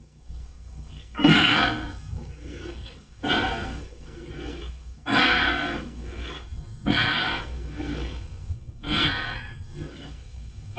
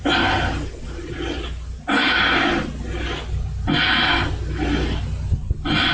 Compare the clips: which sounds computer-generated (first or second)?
first